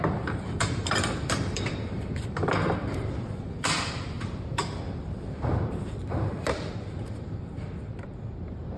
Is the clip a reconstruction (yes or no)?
yes